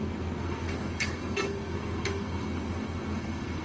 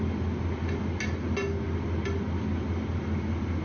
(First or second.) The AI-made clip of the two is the first